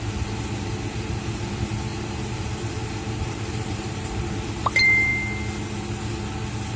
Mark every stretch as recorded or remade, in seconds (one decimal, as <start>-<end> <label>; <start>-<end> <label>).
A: 0.0-5.1 remade; 5.1-6.8 recorded